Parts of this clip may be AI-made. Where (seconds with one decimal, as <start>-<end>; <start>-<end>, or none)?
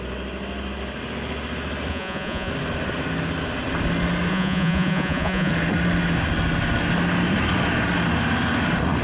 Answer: 1.9-2.5; 4.3-5.5